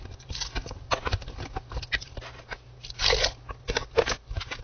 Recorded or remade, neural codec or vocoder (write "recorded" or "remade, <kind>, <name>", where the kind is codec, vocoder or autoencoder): recorded